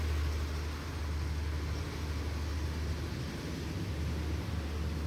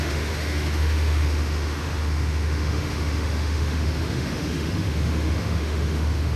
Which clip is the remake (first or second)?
second